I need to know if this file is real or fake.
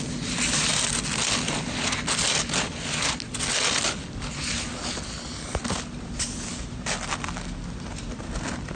real